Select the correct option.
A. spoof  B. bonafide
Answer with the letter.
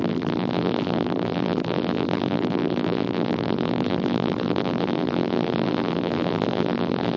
A